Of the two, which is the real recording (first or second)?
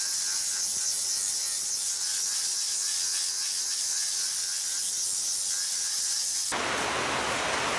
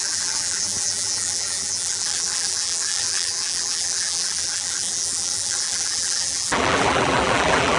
first